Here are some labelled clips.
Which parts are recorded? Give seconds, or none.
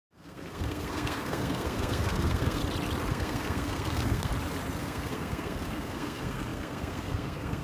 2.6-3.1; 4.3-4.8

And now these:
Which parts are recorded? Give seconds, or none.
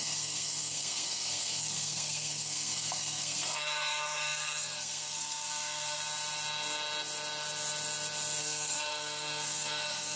6.0-8.4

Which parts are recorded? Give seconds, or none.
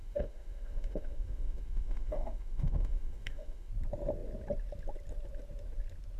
3.7-6.2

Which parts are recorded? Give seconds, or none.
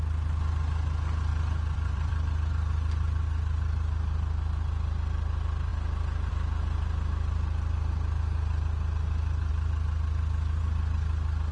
0.0-1.3; 2.5-9.5; 10.6-11.5